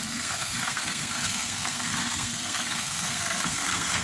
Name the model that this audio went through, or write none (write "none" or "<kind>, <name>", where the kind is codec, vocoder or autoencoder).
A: codec, SNAC